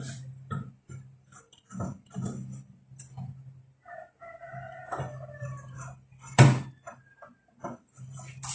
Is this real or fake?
fake